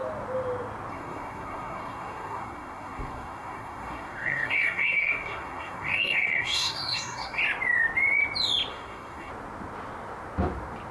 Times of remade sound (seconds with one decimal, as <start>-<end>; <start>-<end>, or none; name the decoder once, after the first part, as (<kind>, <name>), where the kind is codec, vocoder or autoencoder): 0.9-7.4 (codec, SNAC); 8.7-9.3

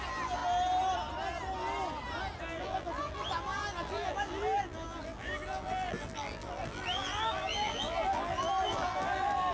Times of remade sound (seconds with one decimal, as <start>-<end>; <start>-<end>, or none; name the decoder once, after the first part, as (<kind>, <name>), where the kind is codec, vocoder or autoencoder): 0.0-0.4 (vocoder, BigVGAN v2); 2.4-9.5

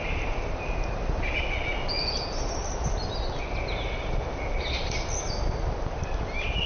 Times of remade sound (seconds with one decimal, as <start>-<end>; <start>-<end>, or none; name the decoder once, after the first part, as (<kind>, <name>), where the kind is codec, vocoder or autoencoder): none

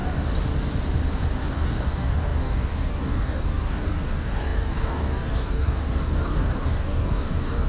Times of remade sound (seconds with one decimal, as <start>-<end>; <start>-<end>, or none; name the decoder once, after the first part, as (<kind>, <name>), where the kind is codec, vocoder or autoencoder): 1.5-7.7 (codec, DAC)